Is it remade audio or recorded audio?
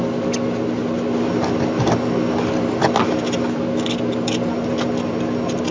recorded